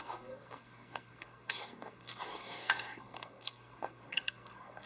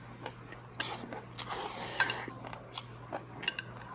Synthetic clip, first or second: first